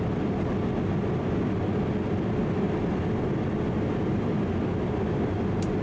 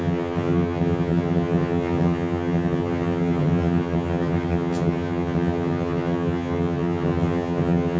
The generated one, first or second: second